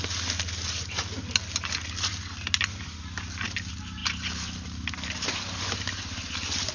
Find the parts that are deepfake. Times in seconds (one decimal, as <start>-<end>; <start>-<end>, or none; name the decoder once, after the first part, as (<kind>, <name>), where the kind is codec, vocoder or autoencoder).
none